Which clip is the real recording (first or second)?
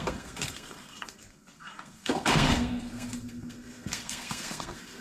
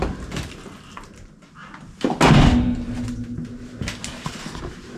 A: second